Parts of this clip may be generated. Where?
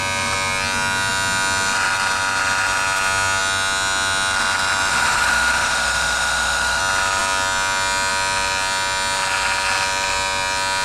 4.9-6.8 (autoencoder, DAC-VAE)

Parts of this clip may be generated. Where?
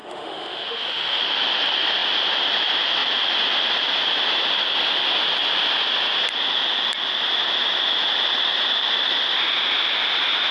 0.0-1.2 (autoencoder, DAC-VAE)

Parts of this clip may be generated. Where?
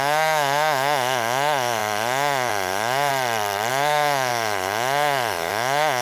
0.0-3.1 (autoencoder, DAC-VAE); 3.7-6.0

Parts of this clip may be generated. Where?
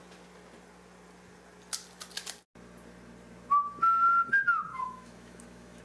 4.7-5.8 (autoencoder, DAC-VAE)